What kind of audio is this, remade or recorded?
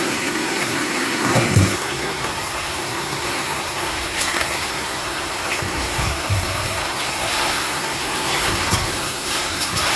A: remade